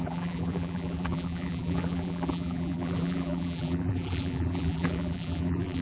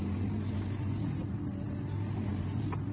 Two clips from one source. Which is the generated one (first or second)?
first